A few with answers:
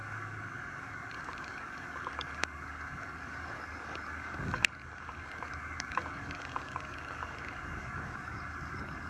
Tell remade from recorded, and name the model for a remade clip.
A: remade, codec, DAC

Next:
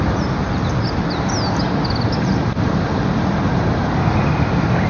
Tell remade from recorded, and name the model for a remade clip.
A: recorded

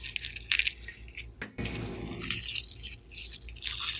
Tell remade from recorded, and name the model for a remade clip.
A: recorded